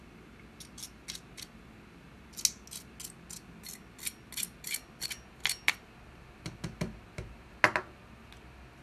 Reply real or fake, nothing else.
real